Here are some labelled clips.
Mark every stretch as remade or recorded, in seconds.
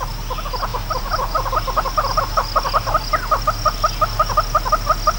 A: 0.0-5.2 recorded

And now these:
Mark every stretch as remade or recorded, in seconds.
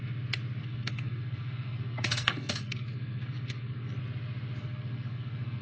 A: 0.0-0.6 recorded; 0.6-4.0 remade; 4.0-4.6 recorded; 4.6-5.6 remade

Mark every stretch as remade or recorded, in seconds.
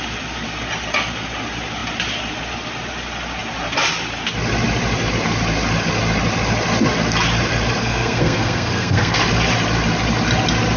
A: 0.0-7.8 recorded; 7.8-9.2 remade; 9.2-10.8 recorded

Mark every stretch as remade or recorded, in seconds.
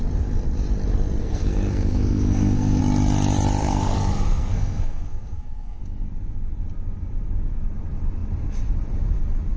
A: 0.0-1.2 recorded; 1.2-2.8 remade; 2.8-3.6 recorded; 3.6-5.8 remade; 5.8-9.6 recorded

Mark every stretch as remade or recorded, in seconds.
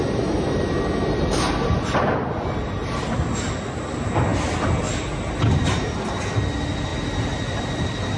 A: 0.0-8.2 recorded